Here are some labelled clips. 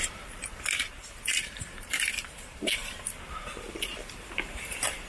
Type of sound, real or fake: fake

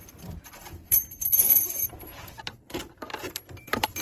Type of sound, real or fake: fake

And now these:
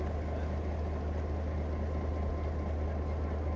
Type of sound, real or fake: real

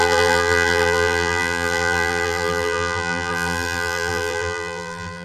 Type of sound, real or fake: fake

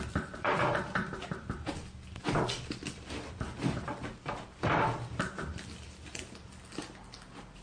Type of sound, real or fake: fake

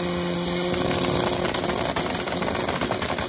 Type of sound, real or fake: real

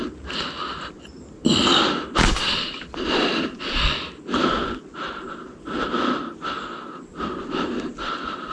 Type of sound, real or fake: real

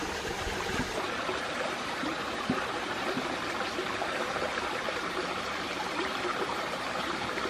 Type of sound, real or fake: fake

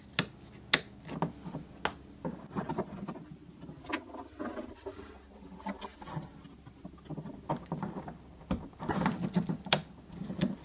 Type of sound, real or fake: real